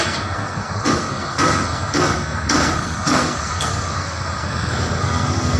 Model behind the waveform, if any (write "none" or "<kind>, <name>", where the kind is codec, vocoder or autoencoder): codec, SNAC